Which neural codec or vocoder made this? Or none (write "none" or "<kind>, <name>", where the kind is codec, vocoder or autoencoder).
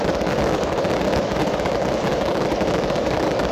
codec, DAC